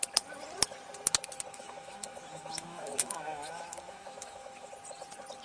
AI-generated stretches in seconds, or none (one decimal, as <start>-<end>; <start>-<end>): 1.5-4.7